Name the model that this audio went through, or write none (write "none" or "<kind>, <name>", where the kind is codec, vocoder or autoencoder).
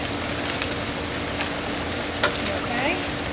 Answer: none